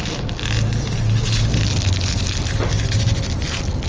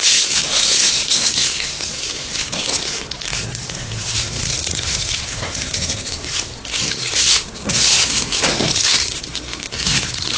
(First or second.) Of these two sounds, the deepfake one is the second